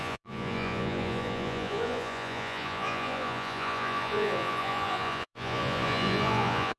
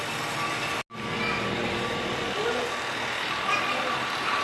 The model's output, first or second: first